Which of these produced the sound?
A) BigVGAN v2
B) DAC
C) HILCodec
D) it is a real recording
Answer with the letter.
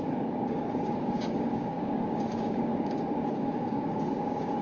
B